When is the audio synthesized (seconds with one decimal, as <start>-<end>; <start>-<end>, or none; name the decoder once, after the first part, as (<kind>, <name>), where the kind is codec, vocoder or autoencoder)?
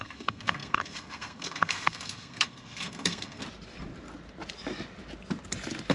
0.0-3.4 (codec, SNAC)